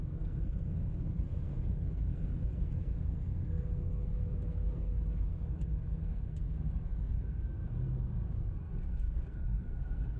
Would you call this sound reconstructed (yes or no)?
yes